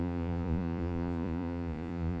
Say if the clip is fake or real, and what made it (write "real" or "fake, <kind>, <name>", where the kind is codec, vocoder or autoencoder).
fake, vocoder, Vocos